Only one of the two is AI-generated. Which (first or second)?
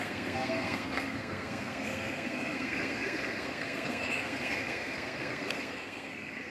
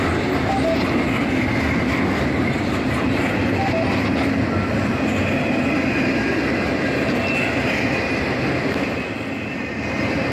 first